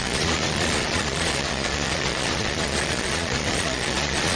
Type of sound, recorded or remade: remade